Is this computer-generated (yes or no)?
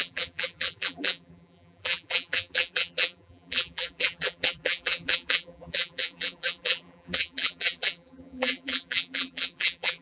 yes